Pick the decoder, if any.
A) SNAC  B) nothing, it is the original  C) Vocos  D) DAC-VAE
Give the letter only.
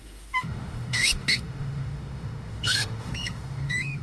D